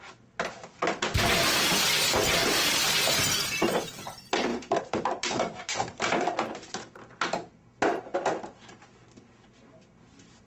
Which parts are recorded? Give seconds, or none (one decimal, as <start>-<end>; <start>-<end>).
0.0-4.5; 5.8-10.5